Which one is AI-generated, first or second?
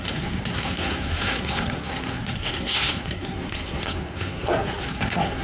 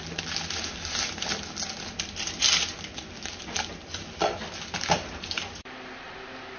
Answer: first